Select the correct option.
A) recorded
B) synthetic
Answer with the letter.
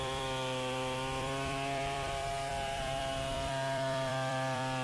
B